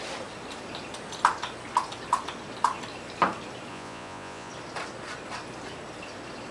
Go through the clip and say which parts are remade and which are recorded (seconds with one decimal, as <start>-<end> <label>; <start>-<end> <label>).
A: 0.0-3.7 recorded; 3.7-4.5 remade; 4.5-6.5 recorded